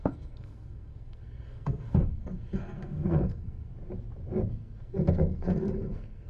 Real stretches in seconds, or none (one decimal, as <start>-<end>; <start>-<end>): 3.7-4.5